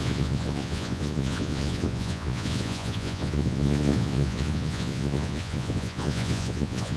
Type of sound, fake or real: fake